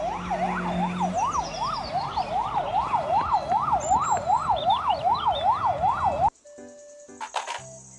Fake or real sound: real